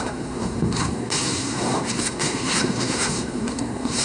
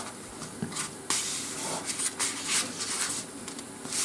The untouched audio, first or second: second